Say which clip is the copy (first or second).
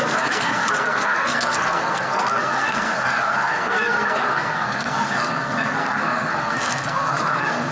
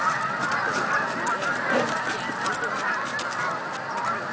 first